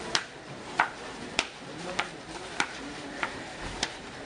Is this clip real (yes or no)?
no